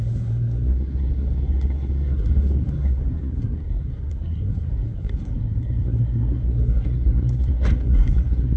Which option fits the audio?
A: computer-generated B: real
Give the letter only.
A